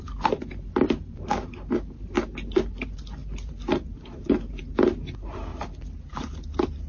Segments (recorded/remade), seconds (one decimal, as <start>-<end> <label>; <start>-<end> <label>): 0.0-6.9 recorded